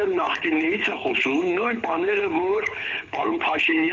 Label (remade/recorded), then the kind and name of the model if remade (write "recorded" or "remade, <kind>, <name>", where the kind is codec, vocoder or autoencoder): remade, codec, HILCodec